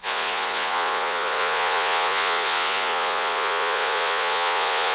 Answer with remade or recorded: remade